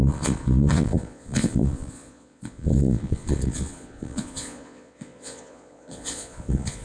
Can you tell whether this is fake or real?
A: fake